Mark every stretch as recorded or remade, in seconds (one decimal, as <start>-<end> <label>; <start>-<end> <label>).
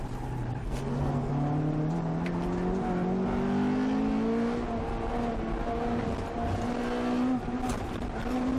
0.0-0.6 recorded; 0.6-1.3 remade; 1.3-8.6 recorded